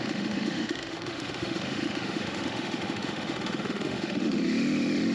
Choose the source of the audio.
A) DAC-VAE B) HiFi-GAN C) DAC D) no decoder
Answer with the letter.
A